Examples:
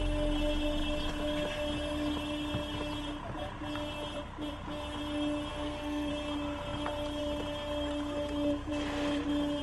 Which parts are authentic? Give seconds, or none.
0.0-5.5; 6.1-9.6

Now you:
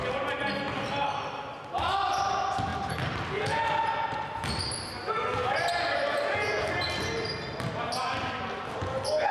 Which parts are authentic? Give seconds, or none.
0.0-9.3

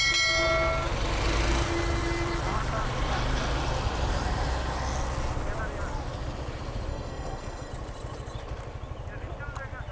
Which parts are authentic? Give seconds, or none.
0.0-6.9; 7.7-9.9

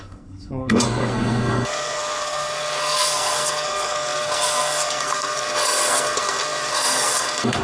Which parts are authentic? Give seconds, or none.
none

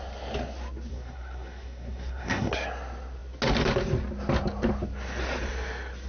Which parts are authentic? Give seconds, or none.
0.0-0.9; 2.5-6.1